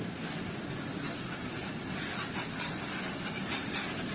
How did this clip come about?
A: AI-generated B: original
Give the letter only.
B